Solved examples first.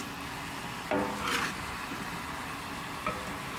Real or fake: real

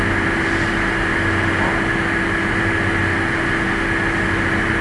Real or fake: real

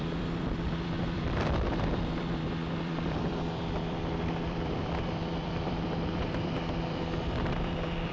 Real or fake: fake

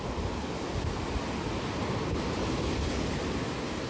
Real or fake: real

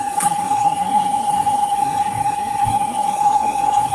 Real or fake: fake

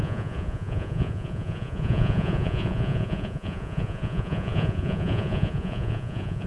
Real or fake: fake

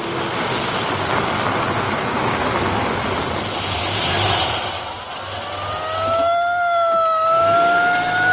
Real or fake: real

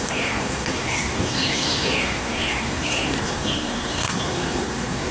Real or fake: fake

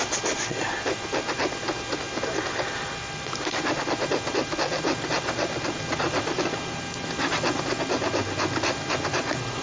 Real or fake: real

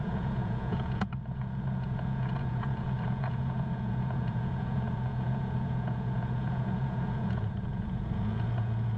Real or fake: fake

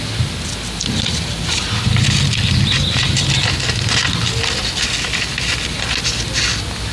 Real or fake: real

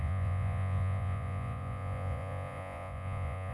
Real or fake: fake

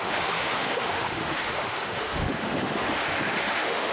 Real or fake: fake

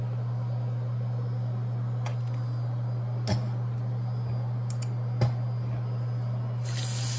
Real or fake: real